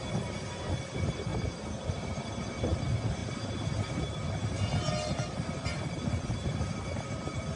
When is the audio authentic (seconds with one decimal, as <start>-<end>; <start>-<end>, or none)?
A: 0.0-7.6